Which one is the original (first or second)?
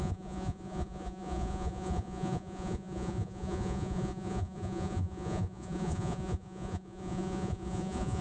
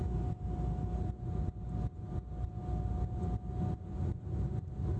second